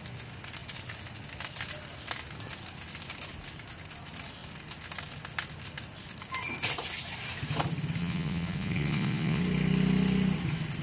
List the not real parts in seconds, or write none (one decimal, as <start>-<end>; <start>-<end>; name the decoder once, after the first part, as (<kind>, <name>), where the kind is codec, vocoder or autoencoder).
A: 8.0-9.4 (vocoder, Vocos)